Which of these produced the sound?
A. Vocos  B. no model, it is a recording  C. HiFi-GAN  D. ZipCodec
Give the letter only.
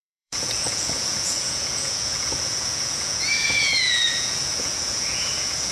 A